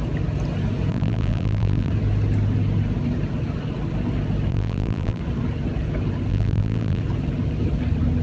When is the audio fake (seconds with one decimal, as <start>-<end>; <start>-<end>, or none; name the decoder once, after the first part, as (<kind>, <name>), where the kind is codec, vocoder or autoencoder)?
0.9-1.9 (vocoder, BigVGAN v2); 4.5-5.2; 6.3-7.0